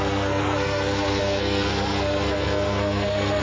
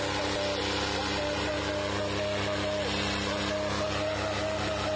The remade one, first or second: first